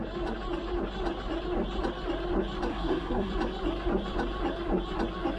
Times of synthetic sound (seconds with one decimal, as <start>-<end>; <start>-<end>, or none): 2.7-3.3